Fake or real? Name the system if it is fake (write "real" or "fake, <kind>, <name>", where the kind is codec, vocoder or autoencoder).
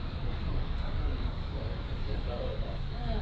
fake, codec, DAC